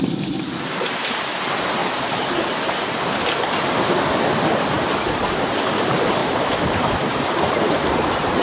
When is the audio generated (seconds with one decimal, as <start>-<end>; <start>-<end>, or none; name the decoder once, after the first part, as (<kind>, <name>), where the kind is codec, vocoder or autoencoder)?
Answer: 0.0-1.8 (vocoder, BigVGAN v2); 4.9-8.4

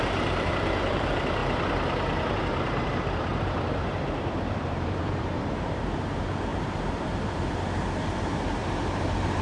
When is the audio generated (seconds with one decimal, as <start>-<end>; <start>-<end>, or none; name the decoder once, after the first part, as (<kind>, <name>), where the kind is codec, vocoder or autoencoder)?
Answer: 0.0-1.4 (vocoder, BigVGAN v2); 2.3-9.4

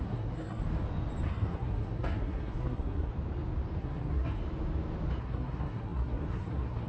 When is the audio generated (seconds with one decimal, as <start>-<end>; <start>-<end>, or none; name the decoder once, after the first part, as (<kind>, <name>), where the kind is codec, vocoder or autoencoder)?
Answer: 0.0-0.6 (codec, SNAC); 1.3-3.1; 3.8-4.4; 5.2-6.9

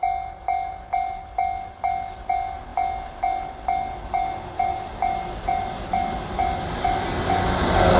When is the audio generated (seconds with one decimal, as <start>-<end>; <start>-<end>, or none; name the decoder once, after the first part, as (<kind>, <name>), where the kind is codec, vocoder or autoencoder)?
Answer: none